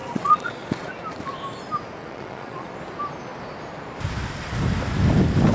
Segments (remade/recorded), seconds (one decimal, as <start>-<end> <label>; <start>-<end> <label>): 0.0-0.9 remade; 0.9-2.0 recorded; 2.0-2.7 remade; 2.7-5.5 recorded